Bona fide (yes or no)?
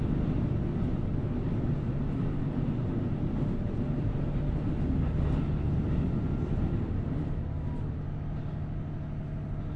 yes